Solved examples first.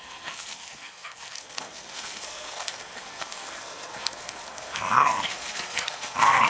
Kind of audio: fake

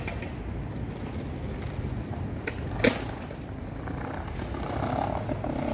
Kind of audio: real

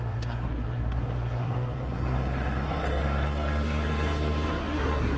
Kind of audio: fake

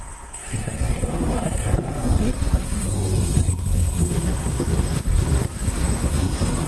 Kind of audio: fake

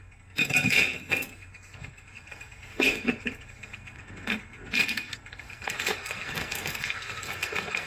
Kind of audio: fake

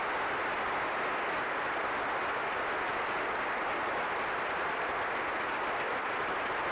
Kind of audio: real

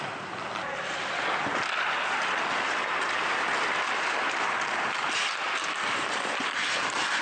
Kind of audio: real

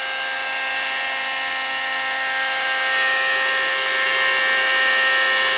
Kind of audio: real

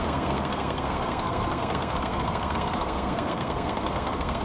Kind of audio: fake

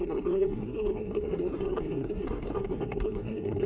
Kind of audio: fake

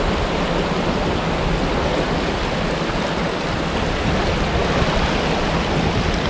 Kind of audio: real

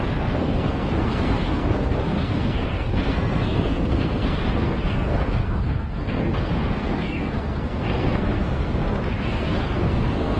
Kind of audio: fake